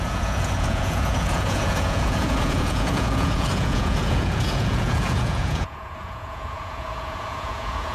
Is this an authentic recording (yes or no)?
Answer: no